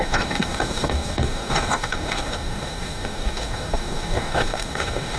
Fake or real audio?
fake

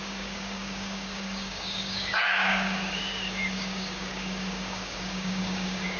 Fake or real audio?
fake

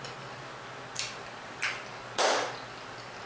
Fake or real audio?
real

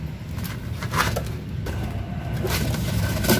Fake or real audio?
real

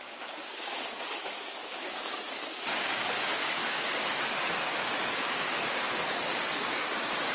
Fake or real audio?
fake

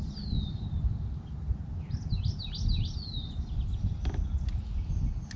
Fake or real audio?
real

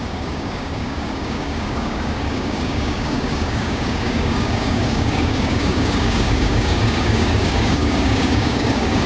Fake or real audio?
fake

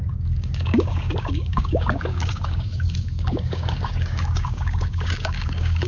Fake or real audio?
fake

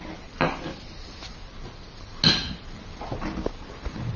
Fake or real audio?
real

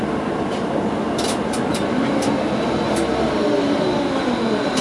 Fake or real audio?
real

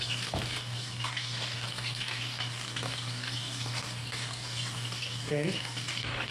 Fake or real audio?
fake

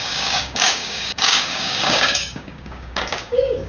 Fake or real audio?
fake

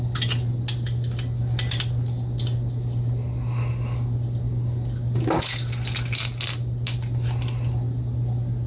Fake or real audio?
real